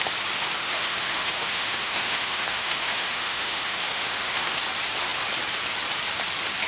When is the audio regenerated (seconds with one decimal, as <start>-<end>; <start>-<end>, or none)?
0.6-4.6